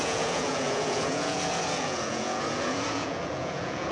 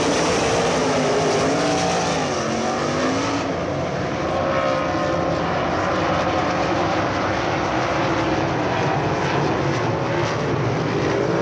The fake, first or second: first